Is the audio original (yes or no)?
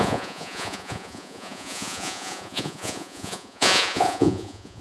no